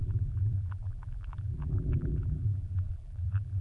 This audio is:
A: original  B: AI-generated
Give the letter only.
B